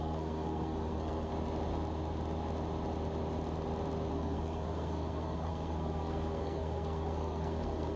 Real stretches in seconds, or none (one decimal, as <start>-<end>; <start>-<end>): 1.3-4.1